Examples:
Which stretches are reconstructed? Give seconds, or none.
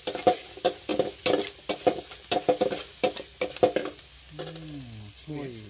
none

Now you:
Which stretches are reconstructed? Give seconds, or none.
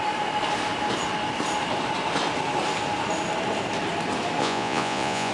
4.4-5.3 (vocoder, Vocos)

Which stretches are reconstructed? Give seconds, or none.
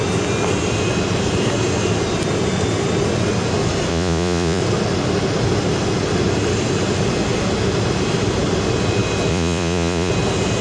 3.9-4.6 (vocoder, Vocos); 9.3-10.1